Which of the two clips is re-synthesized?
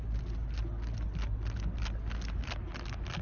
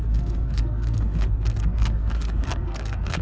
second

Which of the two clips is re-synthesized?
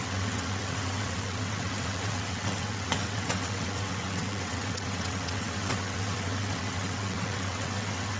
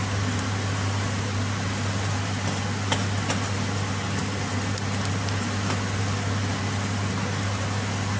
first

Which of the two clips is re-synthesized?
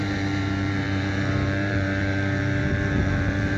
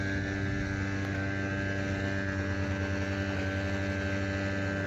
first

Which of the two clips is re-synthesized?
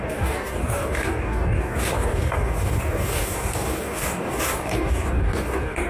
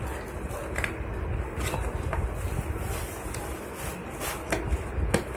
first